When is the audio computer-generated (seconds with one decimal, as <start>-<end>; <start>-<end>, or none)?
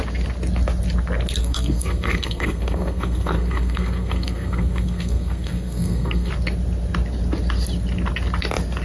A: 1.4-6.3